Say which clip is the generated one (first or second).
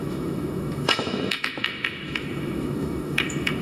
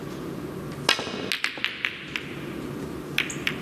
first